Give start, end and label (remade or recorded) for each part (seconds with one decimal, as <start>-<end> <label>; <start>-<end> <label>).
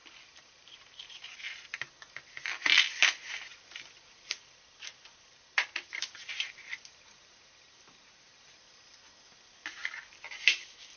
0.0-1.9 remade; 1.9-3.5 recorded; 3.5-8.3 remade; 8.3-11.0 recorded